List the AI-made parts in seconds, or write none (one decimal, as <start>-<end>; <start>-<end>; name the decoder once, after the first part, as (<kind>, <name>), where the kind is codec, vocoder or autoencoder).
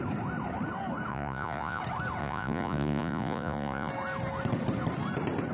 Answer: 1.1-1.8 (vocoder, Vocos); 2.2-3.9